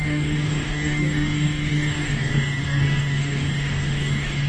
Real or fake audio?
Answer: fake